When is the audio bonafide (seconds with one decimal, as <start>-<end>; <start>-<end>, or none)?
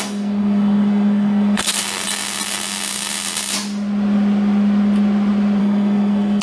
1.8-5.6